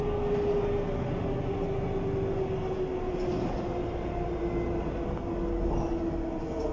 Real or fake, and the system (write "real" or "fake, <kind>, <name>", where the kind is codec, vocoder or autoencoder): real